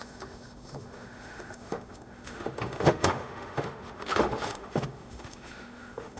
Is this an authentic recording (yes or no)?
no